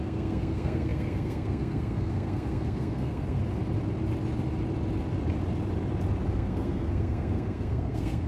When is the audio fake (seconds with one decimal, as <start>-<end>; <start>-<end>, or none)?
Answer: 0.0-3.4; 6.3-8.3